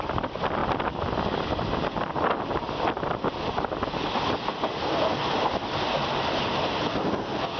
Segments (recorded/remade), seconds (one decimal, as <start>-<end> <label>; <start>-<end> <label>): 0.0-6.9 recorded; 6.9-7.6 remade